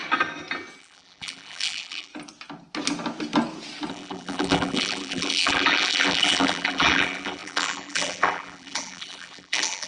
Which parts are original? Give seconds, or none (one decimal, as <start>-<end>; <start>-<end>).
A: 0.0-0.8; 2.1-3.9